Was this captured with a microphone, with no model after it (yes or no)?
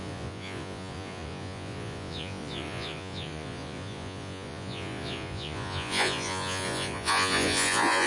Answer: no